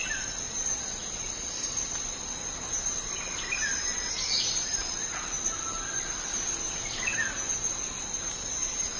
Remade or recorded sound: recorded